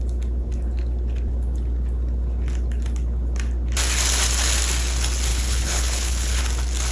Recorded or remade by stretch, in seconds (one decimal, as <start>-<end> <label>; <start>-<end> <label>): 0.0-5.3 recorded; 5.3-6.4 remade; 6.4-6.9 recorded